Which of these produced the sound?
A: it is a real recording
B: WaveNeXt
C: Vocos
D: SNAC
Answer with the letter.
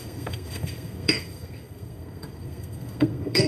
D